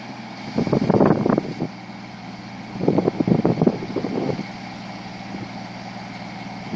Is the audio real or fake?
real